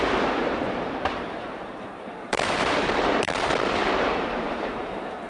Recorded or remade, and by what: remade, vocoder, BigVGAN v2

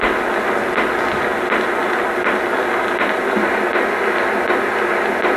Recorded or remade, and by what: recorded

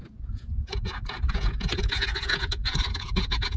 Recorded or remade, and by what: remade, vocoder, Vocos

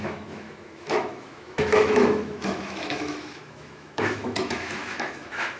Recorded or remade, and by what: remade, autoencoder, DAC-VAE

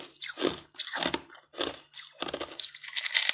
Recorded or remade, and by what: recorded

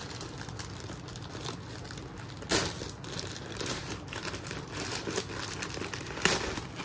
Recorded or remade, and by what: recorded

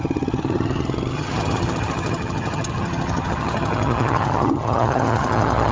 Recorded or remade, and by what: remade, vocoder, HiFi-GAN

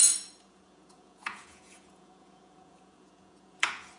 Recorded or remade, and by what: remade, vocoder, Vocos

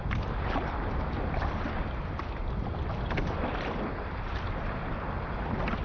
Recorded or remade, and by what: recorded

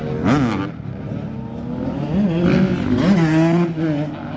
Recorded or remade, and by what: recorded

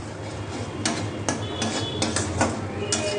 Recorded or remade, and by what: recorded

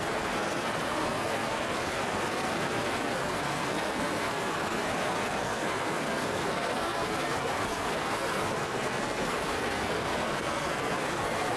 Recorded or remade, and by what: remade, codec, SNAC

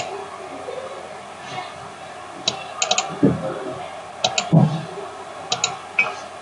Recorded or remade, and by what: recorded